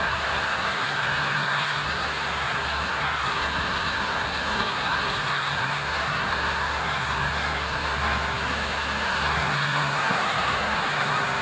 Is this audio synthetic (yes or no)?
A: yes